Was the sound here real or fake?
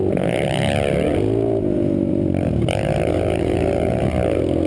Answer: fake